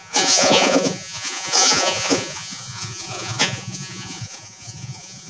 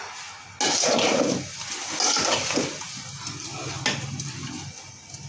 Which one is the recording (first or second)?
second